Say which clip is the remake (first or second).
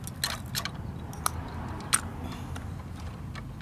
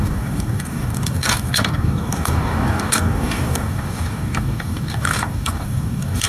second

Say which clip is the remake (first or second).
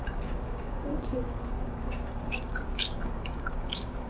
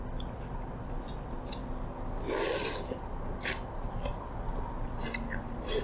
first